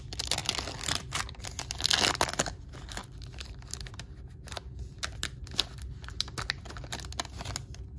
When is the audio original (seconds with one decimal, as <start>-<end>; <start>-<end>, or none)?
0.0-0.4; 1.4-8.0